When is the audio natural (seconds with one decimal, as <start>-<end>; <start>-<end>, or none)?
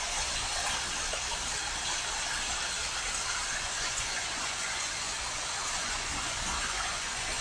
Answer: 0.5-3.6; 5.1-5.7